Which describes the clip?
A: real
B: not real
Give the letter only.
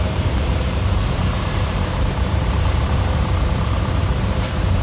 B